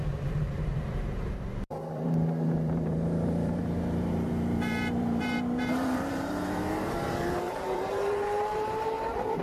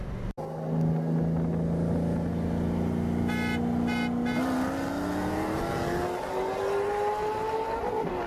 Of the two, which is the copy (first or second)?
first